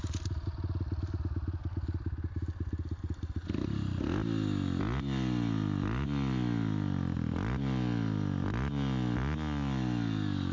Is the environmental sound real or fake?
real